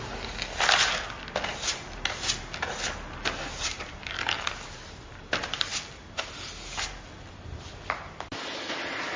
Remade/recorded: recorded